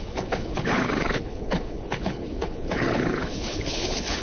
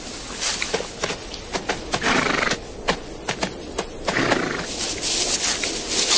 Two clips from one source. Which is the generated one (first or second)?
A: first